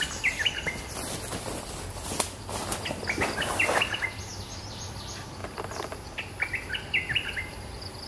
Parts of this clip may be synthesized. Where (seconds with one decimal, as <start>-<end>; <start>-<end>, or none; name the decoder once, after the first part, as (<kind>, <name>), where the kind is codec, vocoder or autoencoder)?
5.4-6.3 (vocoder, BigVGAN v2)